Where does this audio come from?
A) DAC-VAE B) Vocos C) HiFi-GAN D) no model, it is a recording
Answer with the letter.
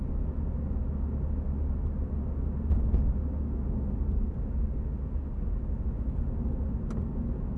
D